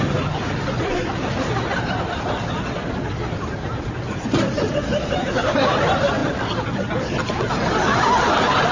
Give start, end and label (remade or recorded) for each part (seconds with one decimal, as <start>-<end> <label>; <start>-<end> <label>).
0.0-8.7 recorded